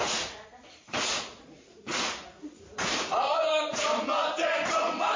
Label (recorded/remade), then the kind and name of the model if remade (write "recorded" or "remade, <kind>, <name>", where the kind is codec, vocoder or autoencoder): remade, vocoder, Vocos